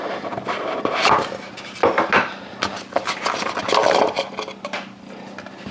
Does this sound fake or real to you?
real